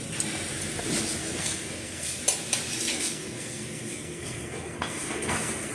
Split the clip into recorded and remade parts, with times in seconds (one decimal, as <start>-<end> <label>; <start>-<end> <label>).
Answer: 0.0-1.2 recorded; 1.2-2.2 remade; 2.2-2.9 recorded; 2.9-5.7 remade